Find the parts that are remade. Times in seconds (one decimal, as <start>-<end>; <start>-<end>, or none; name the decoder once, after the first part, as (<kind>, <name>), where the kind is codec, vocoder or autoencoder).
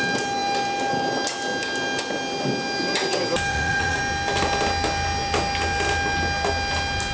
3.5-4.0 (vocoder, Vocos)